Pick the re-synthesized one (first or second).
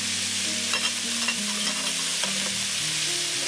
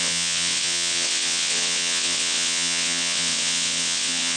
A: second